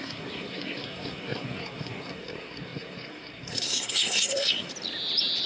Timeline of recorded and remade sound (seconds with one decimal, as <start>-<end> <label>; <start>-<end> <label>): 0.0-4.7 remade; 4.7-5.5 recorded